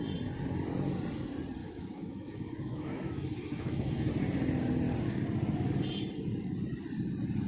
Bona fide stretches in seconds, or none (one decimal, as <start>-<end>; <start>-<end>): 0.0-1.6; 4.1-7.5